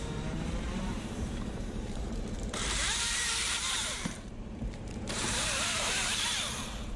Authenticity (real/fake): fake